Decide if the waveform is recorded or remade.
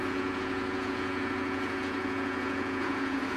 remade